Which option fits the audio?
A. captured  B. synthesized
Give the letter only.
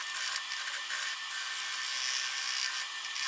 A